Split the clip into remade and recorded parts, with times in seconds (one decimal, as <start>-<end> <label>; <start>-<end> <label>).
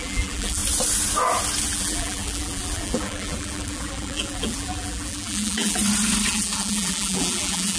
0.0-0.6 remade; 0.6-1.7 recorded; 1.7-5.8 remade; 5.8-6.3 recorded; 6.3-7.8 remade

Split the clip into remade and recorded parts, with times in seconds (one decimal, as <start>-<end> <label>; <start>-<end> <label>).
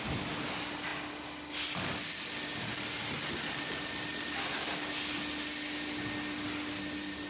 0.0-7.3 recorded